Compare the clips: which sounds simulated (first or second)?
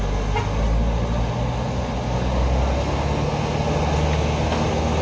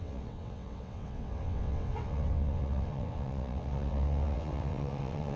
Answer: second